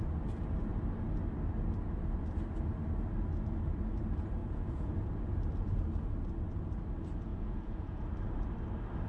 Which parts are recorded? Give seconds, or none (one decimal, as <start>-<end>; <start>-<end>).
0.0-4.4; 4.9-7.3; 8.0-9.1